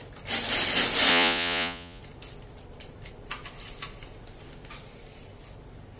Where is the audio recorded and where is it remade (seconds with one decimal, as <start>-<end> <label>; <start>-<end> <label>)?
0.0-1.1 recorded; 1.1-2.0 remade; 2.0-6.0 recorded